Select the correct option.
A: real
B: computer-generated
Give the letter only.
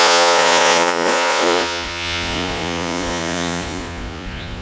B